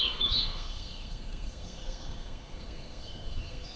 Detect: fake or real fake